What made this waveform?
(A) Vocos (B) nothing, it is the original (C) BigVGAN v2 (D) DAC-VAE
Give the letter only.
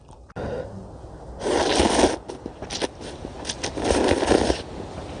B